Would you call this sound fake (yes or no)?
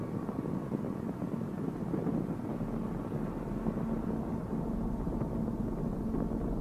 no